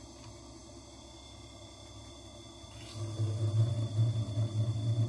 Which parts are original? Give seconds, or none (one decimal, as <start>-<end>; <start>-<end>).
0.0-5.1

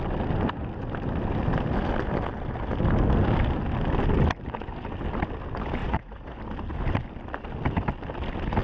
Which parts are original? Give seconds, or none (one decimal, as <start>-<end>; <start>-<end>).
0.0-5.8; 6.4-8.6

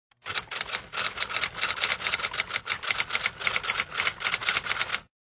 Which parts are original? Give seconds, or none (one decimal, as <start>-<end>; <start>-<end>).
0.0-5.3